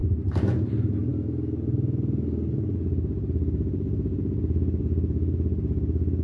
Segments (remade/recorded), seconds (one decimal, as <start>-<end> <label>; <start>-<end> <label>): 0.0-6.2 recorded